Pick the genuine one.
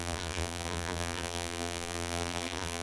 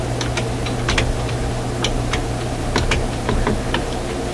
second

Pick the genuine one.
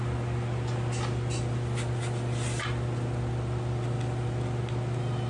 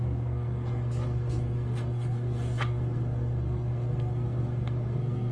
first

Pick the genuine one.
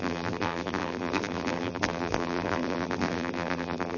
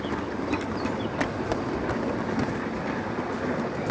second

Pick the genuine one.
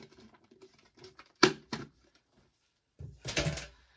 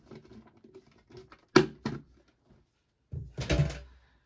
second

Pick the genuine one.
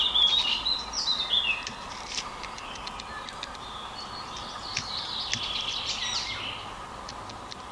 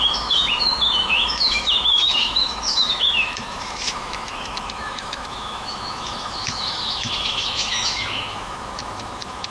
first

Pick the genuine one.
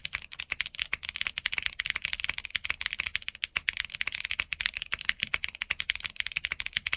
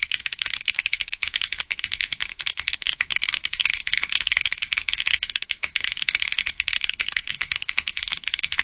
first